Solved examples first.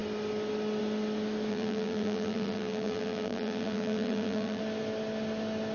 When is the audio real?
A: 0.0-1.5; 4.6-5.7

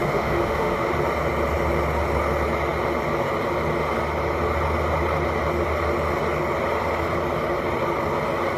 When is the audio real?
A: 0.9-8.6

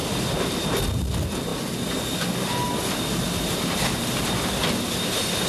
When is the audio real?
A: 0.0-5.5

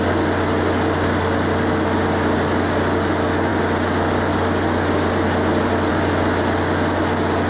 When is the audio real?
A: 0.0-7.5

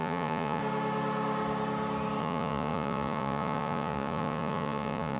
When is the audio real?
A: 0.6-2.2

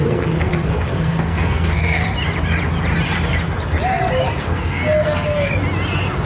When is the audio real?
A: 2.0-4.4; 5.5-6.3

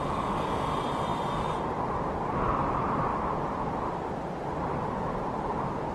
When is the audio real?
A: 3.1-4.1; 4.8-5.9